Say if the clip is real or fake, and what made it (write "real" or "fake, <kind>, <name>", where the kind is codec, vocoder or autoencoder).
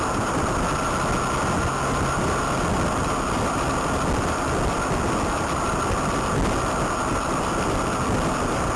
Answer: real